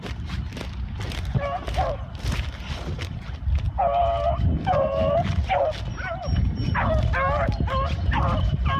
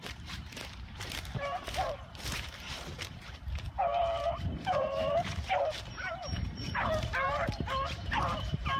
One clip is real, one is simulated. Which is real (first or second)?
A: first